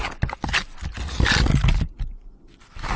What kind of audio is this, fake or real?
real